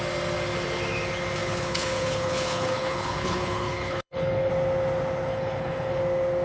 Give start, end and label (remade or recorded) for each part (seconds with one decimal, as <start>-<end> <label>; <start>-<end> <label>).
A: 0.0-1.4 recorded; 1.4-4.5 remade; 4.5-5.3 recorded; 5.3-6.0 remade; 6.0-6.4 recorded